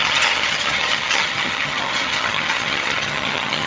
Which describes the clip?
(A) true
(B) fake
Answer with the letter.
B